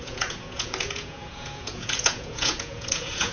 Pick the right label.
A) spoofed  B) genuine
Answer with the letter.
A